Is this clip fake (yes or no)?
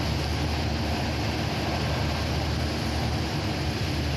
no